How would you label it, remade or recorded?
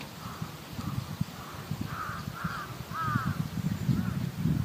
recorded